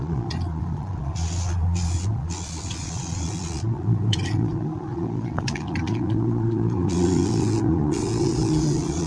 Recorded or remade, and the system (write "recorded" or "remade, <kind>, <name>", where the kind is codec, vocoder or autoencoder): remade, vocoder, Vocos